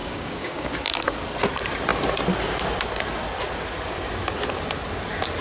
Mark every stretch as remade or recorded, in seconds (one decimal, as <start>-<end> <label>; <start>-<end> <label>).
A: 0.0-0.7 remade; 0.7-5.4 recorded

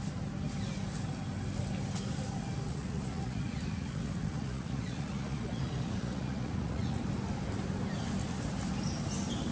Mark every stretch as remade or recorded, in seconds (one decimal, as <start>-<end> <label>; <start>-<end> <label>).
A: 0.0-2.7 recorded; 2.7-7.0 remade; 7.0-9.5 recorded

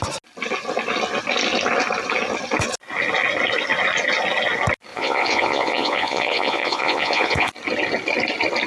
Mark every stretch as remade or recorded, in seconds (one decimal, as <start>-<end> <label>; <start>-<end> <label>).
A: 0.0-4.9 recorded; 4.9-7.5 remade; 7.5-8.7 recorded

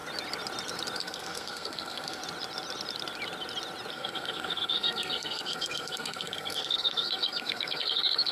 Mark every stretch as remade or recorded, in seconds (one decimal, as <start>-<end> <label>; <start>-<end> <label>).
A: 0.0-1.0 recorded; 1.0-2.2 remade; 2.2-3.9 recorded; 3.9-8.3 remade

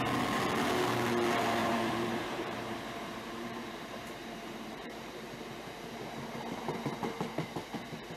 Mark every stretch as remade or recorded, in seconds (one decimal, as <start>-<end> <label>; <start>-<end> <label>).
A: 0.0-1.6 recorded; 1.6-5.2 remade; 5.2-8.2 recorded

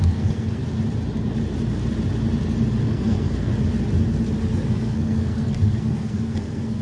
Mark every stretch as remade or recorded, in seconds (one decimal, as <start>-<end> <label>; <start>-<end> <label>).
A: 0.0-0.6 remade; 0.6-2.8 recorded; 2.8-3.5 remade; 3.5-4.5 recorded; 4.5-6.8 remade

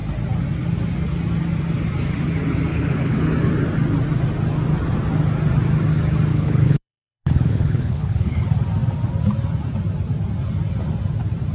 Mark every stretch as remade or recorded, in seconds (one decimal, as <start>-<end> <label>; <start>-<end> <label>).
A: 0.0-2.7 recorded; 2.7-3.2 remade; 3.2-6.3 recorded; 6.3-8.4 remade; 8.4-11.5 recorded